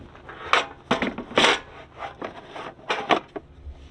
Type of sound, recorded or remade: recorded